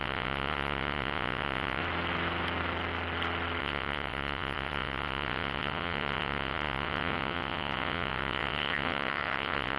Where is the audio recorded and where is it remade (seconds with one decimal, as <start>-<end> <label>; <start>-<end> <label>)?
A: 0.0-1.8 remade; 1.8-3.6 recorded; 3.6-9.8 remade